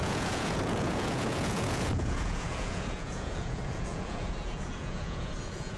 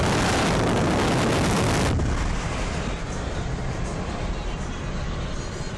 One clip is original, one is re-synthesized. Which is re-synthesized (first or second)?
first